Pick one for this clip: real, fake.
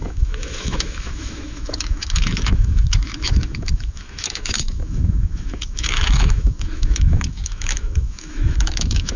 fake